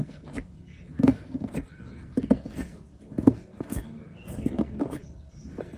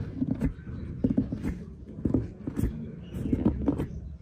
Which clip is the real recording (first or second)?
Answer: second